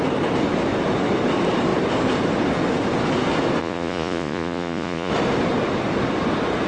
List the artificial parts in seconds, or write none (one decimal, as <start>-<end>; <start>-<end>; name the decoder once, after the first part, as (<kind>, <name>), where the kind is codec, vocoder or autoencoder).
3.6-5.1 (vocoder, Vocos)